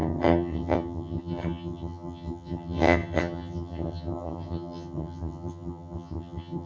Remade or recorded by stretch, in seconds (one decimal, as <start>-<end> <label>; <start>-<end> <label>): 0.0-6.7 remade